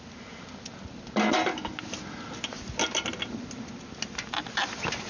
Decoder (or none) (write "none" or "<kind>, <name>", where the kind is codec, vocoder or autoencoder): none